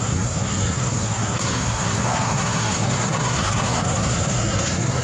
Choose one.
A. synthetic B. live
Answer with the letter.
A